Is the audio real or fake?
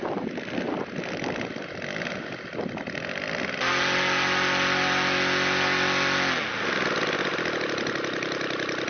real